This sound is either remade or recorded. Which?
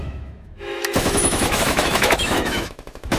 remade